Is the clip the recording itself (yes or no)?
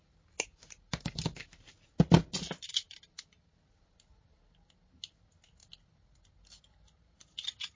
yes